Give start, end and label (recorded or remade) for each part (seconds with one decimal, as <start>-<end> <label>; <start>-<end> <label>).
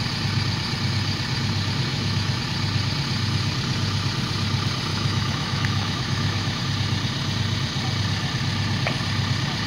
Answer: 0.0-1.9 recorded; 1.9-2.4 remade; 2.4-4.9 recorded; 4.9-6.6 remade; 6.6-9.7 recorded